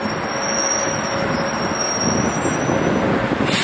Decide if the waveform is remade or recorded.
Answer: recorded